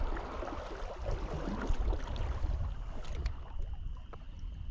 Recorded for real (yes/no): yes